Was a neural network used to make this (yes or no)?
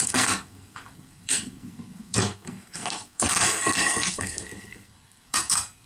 yes